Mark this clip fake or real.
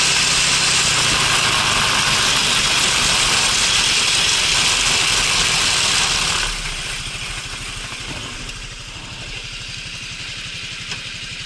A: real